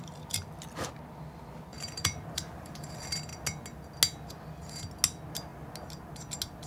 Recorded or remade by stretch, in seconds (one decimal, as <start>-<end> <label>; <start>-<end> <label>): 0.0-1.7 recorded; 1.7-2.9 remade; 2.9-6.7 recorded